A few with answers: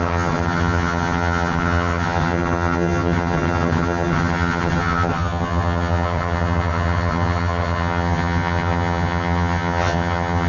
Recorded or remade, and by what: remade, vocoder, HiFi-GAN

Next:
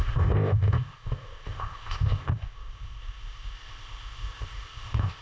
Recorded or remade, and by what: remade, codec, ZipCodec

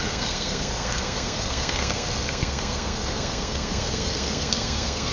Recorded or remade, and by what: remade, codec, SNAC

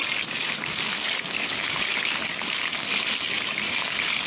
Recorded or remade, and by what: remade, codec, DAC